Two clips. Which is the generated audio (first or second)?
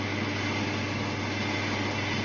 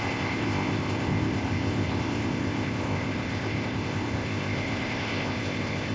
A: second